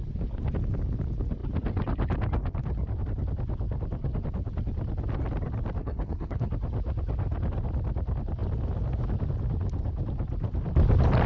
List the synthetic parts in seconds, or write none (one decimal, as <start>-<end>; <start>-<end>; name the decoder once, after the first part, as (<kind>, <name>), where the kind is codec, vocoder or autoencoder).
5.8-6.5 (codec, HILCodec)